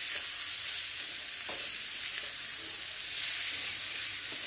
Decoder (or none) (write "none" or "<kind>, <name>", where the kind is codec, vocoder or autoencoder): none